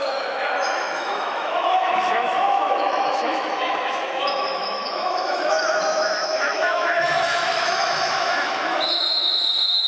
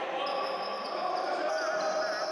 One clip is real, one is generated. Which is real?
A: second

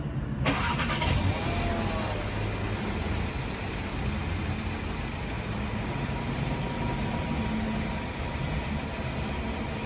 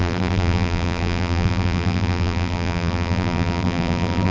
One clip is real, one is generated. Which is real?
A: first